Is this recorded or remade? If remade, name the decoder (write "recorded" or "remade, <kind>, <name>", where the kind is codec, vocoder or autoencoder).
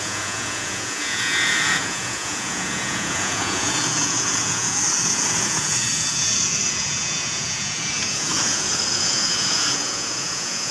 remade, vocoder, Vocos